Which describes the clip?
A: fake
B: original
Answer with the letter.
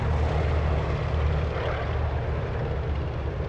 B